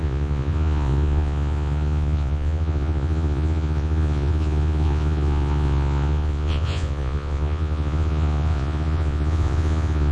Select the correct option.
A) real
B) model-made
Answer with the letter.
B